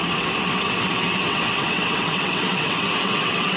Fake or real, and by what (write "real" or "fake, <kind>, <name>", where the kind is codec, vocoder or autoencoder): fake, vocoder, WaveNeXt